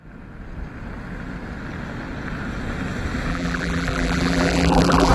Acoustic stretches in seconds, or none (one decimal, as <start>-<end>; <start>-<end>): 0.0-3.3